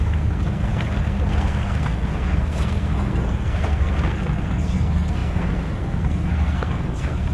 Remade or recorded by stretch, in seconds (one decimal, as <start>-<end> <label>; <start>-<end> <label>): 0.0-7.3 remade